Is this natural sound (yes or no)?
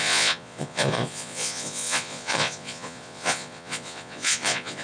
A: no